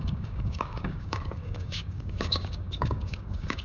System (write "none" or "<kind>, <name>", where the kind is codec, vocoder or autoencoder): codec, DAC